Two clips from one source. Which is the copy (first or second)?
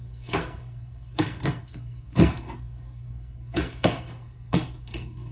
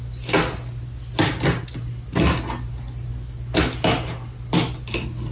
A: first